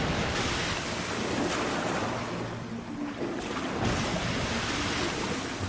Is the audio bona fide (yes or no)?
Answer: yes